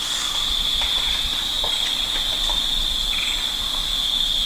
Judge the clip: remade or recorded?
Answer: recorded